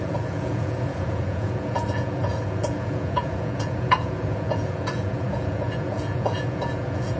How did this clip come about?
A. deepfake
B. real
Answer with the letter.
A